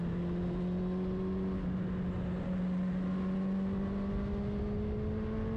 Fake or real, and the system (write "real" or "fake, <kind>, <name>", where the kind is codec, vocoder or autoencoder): real